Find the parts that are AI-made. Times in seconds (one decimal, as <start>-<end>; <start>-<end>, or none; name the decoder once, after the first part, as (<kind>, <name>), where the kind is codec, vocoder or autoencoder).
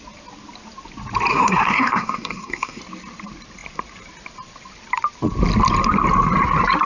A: 1.3-2.8 (codec, SNAC)